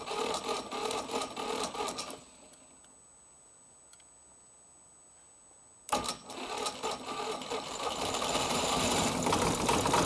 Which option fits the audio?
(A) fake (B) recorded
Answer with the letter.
B